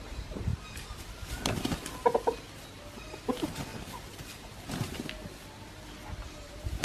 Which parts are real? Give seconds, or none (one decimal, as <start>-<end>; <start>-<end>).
none